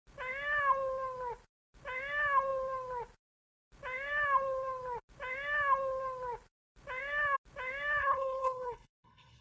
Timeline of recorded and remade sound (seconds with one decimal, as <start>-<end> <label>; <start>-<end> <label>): 0.0-8.0 recorded; 8.0-9.4 remade